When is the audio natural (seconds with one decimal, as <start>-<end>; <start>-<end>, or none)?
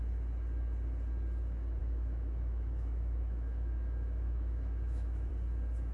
0.0-1.8; 5.3-5.9